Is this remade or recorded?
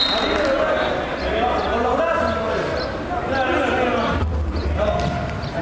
recorded